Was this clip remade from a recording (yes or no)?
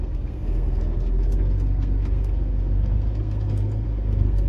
yes